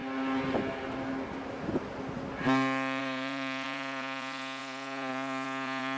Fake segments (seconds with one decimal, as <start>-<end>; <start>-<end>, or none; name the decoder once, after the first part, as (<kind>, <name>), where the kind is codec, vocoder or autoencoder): 3.0-6.0 (vocoder, Vocos)